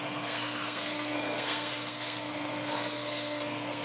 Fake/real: fake